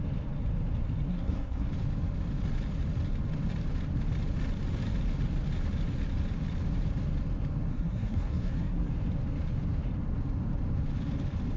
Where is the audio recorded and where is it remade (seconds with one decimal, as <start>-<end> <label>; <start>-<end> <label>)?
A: 0.0-1.1 recorded; 1.1-1.7 remade; 1.7-7.7 recorded; 7.7-8.9 remade; 8.9-11.6 recorded